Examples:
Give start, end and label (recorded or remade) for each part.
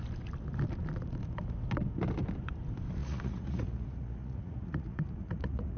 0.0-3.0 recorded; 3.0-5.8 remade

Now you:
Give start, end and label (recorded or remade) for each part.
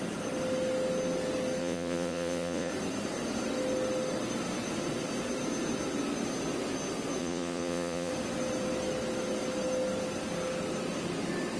0.0-1.6 recorded; 1.6-2.7 remade; 2.7-7.2 recorded; 7.2-8.1 remade; 8.1-11.6 recorded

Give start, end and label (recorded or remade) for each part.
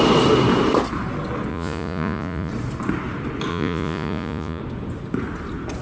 0.0-1.5 recorded; 1.5-2.5 remade; 2.5-3.5 recorded; 3.5-4.6 remade; 4.6-5.8 recorded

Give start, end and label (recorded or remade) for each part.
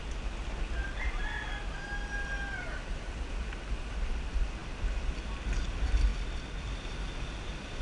0.0-7.8 recorded